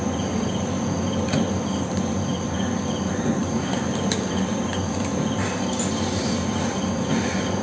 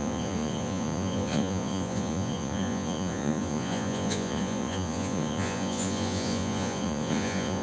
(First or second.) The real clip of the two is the first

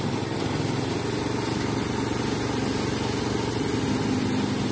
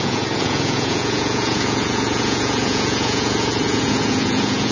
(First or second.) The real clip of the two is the first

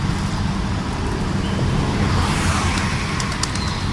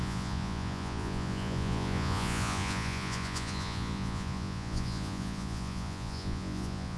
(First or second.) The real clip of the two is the first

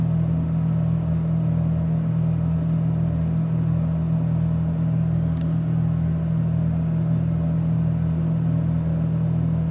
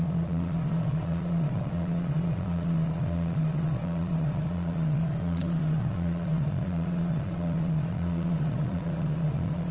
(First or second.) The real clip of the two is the first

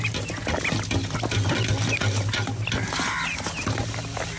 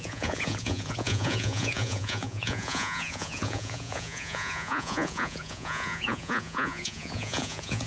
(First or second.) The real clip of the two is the first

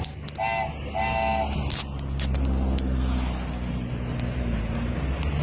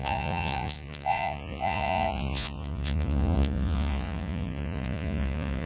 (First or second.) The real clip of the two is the first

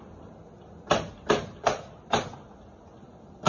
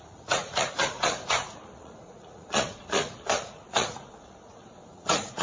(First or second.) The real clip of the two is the first